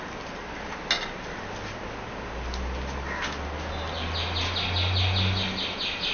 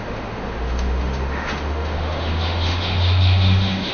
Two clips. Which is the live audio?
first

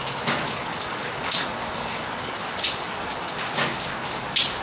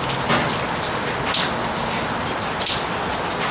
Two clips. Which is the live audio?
second